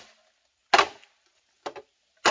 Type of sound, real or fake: real